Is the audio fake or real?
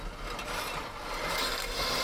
real